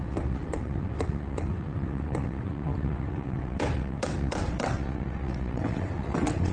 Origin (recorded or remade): remade